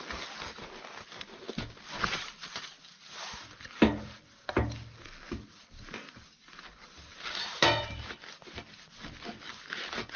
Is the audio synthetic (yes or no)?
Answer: no